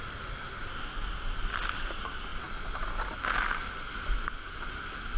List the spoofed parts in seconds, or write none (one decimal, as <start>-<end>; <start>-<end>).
none